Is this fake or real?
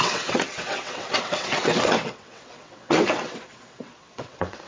fake